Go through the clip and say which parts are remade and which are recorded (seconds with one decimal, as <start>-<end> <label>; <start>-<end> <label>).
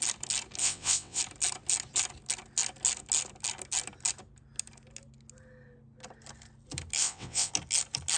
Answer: 0.0-0.6 recorded; 0.6-1.2 remade; 1.2-7.0 recorded; 7.0-7.5 remade; 7.5-8.2 recorded